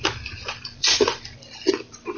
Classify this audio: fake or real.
fake